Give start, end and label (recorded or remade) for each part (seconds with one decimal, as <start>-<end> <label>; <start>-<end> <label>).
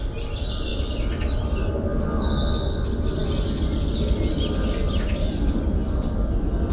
0.0-0.7 recorded; 0.7-1.4 remade; 1.4-6.7 recorded